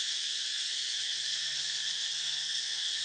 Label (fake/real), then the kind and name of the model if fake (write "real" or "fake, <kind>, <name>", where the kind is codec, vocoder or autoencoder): fake, codec, SNAC